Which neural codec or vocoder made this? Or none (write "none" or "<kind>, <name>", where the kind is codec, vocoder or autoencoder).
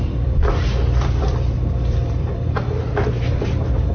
vocoder, BigVGAN v2